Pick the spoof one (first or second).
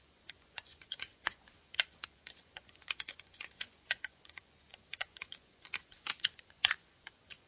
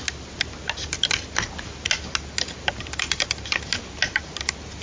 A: first